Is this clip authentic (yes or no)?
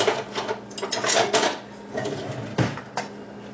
yes